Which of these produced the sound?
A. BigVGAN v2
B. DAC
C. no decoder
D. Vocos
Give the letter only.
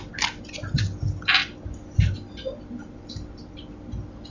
C